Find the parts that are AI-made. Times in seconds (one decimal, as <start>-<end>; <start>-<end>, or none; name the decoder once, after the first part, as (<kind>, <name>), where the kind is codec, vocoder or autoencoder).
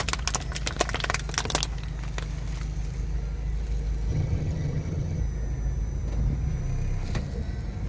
4.1-5.2 (vocoder, HiFi-GAN)